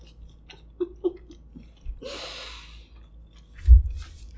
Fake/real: real